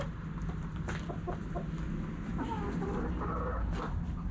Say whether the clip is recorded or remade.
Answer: recorded